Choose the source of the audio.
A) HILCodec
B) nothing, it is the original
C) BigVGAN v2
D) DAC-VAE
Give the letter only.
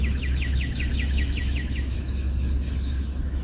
D